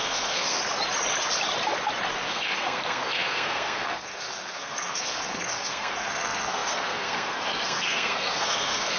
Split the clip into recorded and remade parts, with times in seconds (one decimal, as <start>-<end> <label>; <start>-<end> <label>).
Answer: 0.0-0.6 remade; 0.6-2.3 recorded; 2.3-9.0 remade